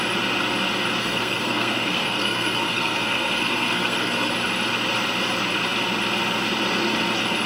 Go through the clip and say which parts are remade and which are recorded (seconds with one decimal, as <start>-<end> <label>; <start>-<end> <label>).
0.0-1.0 recorded; 1.0-4.3 remade; 4.3-7.5 recorded